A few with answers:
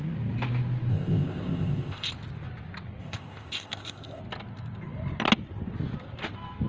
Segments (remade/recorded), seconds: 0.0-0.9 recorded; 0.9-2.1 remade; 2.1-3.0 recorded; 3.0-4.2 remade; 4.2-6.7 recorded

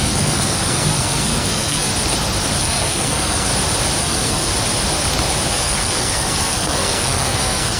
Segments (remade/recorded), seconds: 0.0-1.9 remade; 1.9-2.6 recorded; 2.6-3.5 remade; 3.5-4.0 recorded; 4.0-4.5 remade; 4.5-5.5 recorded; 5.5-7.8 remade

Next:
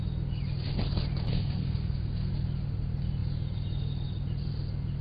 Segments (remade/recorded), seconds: 0.0-1.3 recorded; 1.3-2.3 remade; 2.3-5.0 recorded

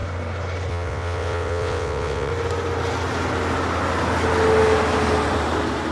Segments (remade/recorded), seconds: 0.0-0.7 recorded; 0.7-2.3 remade; 2.3-5.9 recorded

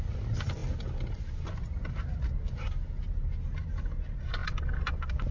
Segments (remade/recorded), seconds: 0.0-5.3 recorded